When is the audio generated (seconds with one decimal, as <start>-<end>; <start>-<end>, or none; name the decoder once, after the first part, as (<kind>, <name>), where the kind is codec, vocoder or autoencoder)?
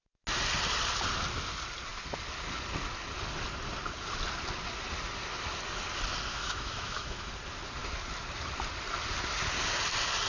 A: 6.3-7.3 (autoencoder, DAC-VAE)